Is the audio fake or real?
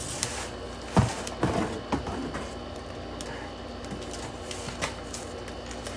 real